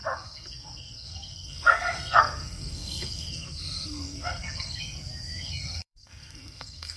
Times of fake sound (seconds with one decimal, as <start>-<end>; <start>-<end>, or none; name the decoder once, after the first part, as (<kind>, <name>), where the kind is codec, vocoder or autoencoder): 0.0-7.0 (codec, SNAC)